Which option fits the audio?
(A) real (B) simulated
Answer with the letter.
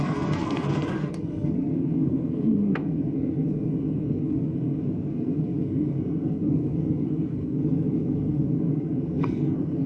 B